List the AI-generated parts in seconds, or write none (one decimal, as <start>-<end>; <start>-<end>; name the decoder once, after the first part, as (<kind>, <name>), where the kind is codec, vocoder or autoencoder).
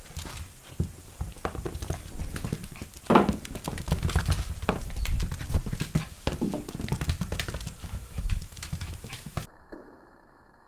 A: 7.8-10.7 (autoencoder, DAC-VAE)